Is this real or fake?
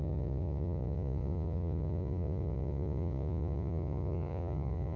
fake